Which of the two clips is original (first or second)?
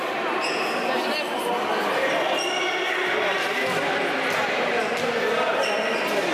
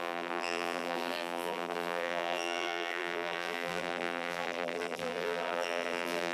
first